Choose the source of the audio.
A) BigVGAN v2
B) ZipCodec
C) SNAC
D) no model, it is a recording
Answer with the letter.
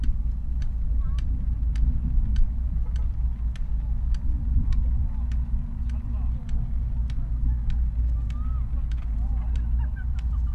D